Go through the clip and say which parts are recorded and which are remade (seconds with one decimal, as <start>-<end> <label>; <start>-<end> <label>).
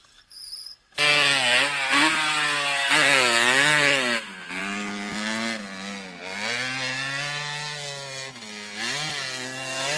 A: 0.0-10.0 recorded